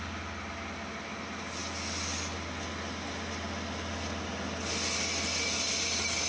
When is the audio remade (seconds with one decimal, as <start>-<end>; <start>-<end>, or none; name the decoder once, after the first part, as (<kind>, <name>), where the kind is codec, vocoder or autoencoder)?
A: none